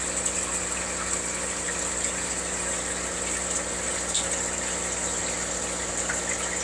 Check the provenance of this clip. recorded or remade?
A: recorded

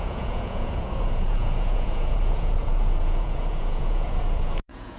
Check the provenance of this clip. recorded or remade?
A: remade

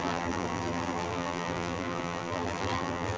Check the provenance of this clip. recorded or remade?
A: remade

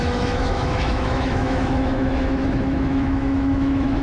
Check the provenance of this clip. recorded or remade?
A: remade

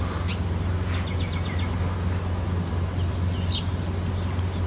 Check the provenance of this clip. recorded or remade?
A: recorded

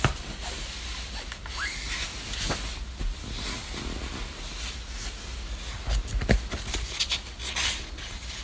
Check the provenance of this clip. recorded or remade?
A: recorded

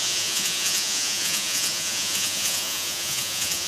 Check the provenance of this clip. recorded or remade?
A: remade